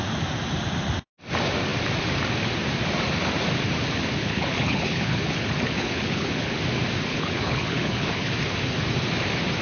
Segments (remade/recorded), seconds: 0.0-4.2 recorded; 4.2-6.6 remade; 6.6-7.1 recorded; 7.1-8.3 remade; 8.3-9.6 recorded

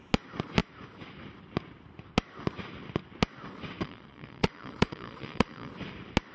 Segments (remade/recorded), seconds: 0.0-3.8 recorded; 3.8-5.7 remade; 5.7-6.3 recorded

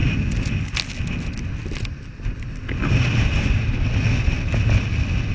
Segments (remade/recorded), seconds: 0.0-5.3 recorded

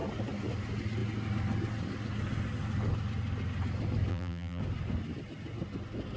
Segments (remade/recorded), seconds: 0.0-4.1 recorded; 4.1-4.6 remade; 4.6-6.2 recorded

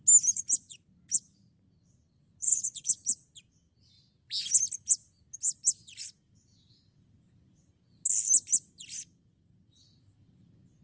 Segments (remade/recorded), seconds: 0.0-2.4 recorded; 2.4-2.9 remade; 2.9-10.8 recorded

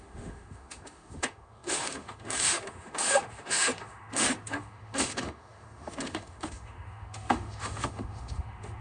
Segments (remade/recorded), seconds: 0.0-8.8 remade

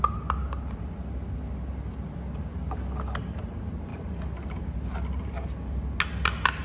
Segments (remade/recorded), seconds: 0.0-6.6 recorded

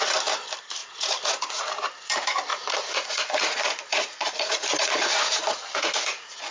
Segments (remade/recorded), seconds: 0.0-0.8 recorded; 0.8-1.6 remade; 1.6-2.5 recorded; 2.5-6.5 remade